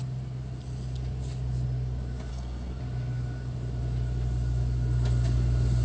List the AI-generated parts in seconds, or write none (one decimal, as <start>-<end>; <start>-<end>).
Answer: 2.3-2.8